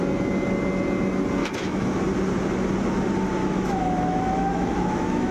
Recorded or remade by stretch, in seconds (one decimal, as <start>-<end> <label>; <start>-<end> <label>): 0.0-1.4 recorded; 1.4-2.0 remade; 2.0-3.4 recorded; 3.4-5.3 remade